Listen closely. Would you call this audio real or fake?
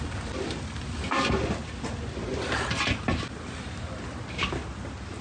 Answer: real